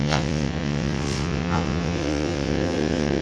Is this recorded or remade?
remade